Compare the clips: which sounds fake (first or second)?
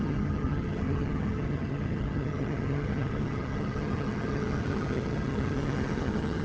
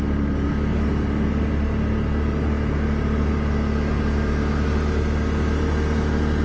first